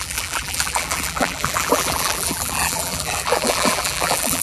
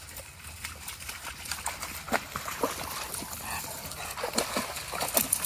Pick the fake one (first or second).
first